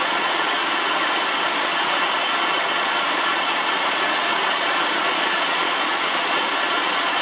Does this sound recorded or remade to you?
remade